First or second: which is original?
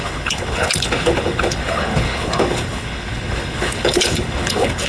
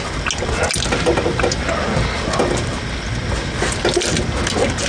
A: second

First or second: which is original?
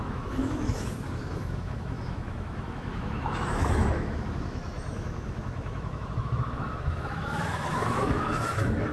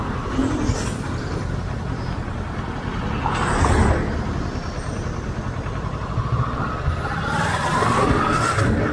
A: second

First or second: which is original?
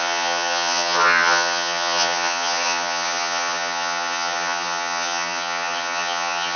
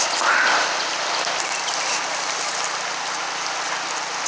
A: second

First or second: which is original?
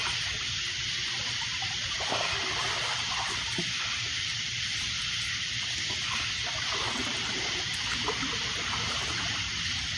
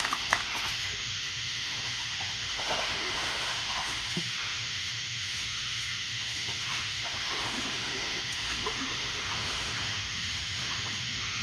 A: first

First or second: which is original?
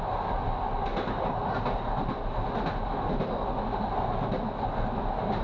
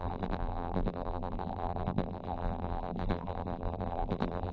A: first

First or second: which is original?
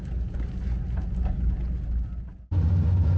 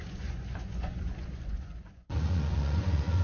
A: first